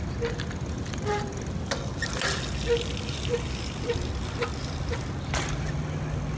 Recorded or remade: recorded